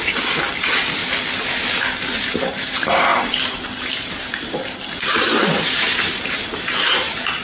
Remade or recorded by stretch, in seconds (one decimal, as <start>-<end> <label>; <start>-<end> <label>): 0.0-1.0 remade; 1.0-2.4 recorded; 2.4-7.4 remade